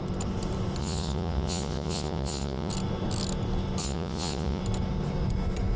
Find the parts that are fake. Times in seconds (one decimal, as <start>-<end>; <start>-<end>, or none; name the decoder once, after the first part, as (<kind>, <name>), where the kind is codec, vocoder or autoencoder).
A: 0.8-2.7 (vocoder, Vocos); 3.8-4.6